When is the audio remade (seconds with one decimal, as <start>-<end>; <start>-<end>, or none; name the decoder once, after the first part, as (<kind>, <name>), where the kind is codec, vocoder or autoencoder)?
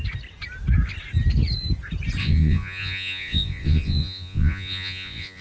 2.2-5.4 (vocoder, Vocos)